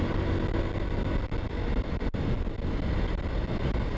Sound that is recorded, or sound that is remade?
recorded